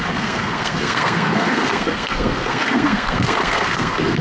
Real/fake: fake